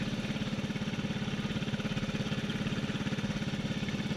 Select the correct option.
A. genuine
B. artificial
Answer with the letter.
A